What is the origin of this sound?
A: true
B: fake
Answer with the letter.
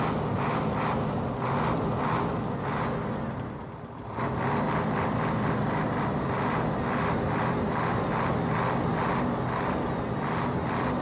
A